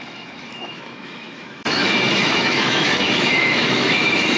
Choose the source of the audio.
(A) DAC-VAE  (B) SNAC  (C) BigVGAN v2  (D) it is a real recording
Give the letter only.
A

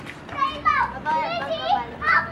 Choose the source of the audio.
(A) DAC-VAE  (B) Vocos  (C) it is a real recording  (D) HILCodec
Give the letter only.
C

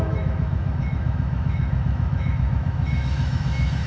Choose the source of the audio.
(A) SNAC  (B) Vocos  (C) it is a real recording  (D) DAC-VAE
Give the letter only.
D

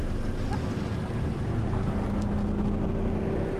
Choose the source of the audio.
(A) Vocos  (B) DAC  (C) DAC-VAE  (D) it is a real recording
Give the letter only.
D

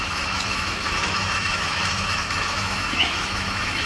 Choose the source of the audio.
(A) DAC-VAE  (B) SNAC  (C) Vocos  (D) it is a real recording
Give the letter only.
A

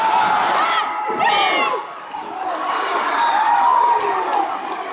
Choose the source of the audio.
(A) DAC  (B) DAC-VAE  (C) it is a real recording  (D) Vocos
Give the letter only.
C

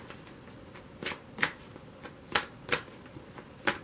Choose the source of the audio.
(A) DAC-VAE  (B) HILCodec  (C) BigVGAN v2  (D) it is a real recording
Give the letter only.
D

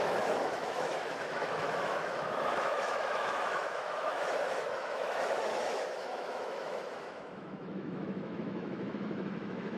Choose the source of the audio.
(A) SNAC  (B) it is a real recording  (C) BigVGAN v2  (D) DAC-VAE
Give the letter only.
D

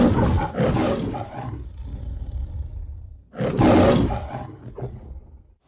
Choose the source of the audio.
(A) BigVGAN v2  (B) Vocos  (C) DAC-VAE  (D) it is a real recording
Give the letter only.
D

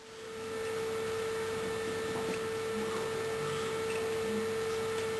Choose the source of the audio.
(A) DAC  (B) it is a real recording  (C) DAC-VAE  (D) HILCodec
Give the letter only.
B